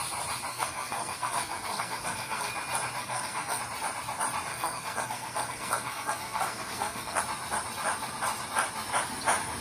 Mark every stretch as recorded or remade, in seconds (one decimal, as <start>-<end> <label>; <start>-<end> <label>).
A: 0.0-0.5 recorded; 0.5-2.5 remade; 2.5-3.0 recorded; 3.0-3.6 remade; 3.6-4.5 recorded; 4.5-7.2 remade; 7.2-9.6 recorded